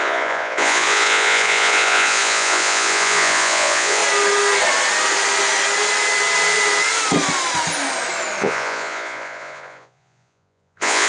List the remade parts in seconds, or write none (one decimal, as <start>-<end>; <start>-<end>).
0.0-4.0; 8.4-11.1